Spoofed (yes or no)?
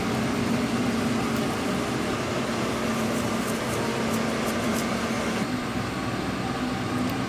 no